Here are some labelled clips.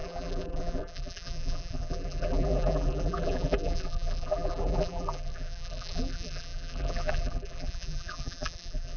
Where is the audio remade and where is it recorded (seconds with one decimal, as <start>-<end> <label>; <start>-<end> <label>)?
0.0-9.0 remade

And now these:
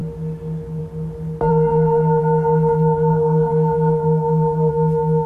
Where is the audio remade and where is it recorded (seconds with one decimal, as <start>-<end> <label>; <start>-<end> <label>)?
0.0-1.5 recorded; 1.5-4.7 remade; 4.7-5.3 recorded

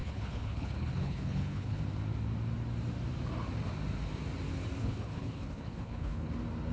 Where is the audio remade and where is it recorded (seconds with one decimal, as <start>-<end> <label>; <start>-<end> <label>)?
0.0-1.8 remade; 1.8-4.8 recorded; 4.8-6.3 remade; 6.3-6.7 recorded

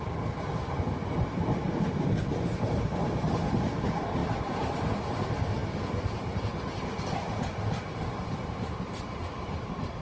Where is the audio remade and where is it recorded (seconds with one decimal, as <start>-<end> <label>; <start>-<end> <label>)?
0.0-10.0 recorded

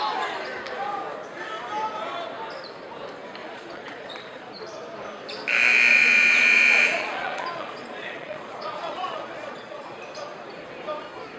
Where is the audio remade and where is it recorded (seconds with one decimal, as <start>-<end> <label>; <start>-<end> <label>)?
0.0-3.4 recorded; 3.4-4.6 remade; 4.6-5.9 recorded; 5.9-10.0 remade; 10.0-11.4 recorded

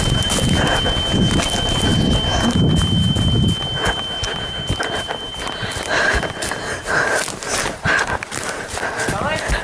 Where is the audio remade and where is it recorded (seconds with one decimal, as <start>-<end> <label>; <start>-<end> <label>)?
0.0-4.3 recorded; 4.3-6.4 remade; 6.4-9.6 recorded

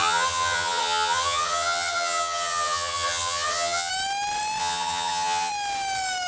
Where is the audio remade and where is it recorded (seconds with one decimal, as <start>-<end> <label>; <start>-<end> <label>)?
0.0-3.9 remade; 3.9-4.6 recorded; 4.6-5.5 remade; 5.5-6.3 recorded

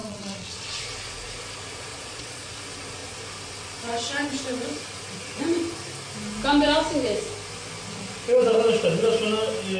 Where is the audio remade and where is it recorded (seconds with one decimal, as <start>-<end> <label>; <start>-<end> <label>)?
0.0-0.8 remade; 0.8-1.9 recorded; 1.9-2.6 remade; 2.6-9.8 recorded